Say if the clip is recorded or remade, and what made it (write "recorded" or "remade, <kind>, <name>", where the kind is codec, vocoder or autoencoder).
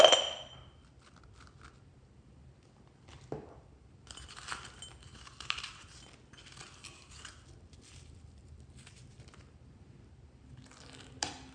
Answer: recorded